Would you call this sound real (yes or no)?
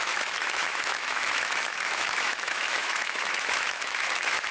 no